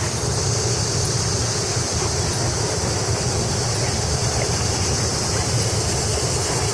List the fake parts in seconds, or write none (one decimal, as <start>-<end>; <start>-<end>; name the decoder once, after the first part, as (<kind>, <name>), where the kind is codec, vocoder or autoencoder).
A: 4.2-5.7 (vocoder, BigVGAN v2)